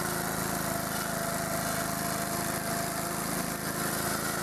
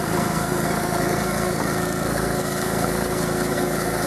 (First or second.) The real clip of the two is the first